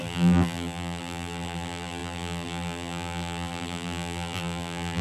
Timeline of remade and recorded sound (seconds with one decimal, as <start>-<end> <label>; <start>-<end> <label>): 0.0-5.0 remade

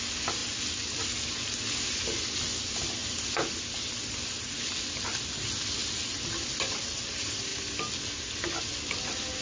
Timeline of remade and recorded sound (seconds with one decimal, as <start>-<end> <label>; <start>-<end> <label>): 0.0-9.4 recorded

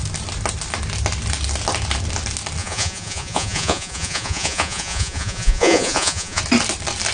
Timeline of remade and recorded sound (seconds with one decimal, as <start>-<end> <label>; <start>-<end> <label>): 0.0-2.6 recorded; 2.6-6.4 remade; 6.4-7.1 recorded

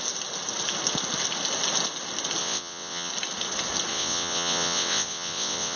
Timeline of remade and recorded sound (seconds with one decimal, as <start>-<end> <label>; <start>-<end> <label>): 0.0-2.4 recorded; 2.4-3.1 remade; 3.1-3.9 recorded; 3.9-5.8 remade

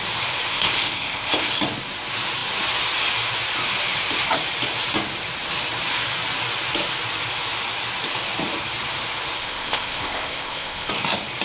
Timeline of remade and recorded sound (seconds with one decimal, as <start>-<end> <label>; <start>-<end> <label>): 0.0-0.5 recorded; 0.5-1.5 remade; 1.5-9.4 recorded; 9.4-10.9 remade; 10.9-11.4 recorded